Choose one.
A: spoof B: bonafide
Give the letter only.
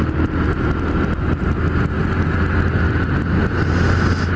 B